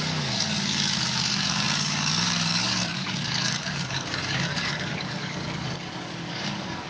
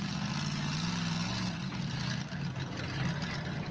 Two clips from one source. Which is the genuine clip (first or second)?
second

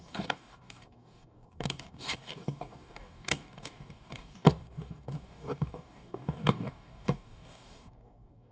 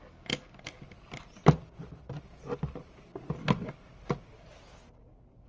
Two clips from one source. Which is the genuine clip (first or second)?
second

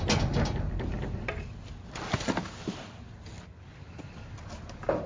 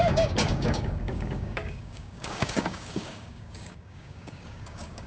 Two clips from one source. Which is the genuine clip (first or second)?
first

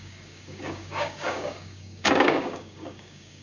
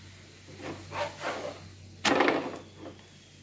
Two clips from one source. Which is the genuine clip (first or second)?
second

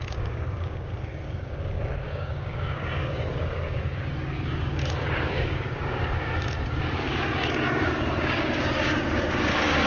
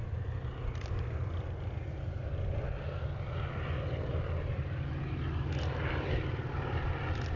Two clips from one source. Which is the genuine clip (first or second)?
second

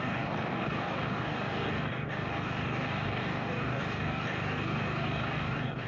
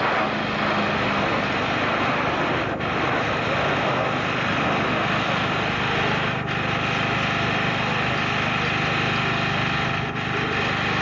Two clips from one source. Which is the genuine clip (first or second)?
second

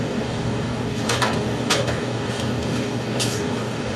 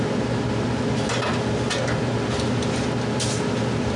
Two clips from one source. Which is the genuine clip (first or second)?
second